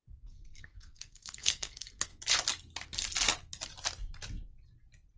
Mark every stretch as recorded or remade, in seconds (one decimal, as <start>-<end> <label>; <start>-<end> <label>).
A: 0.0-2.1 remade; 2.1-5.2 recorded